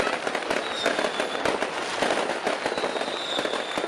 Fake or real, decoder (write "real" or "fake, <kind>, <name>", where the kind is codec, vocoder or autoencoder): real